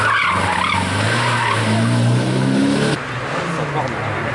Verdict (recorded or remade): recorded